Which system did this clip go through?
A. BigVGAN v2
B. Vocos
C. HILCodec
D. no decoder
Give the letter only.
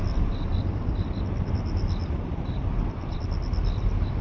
D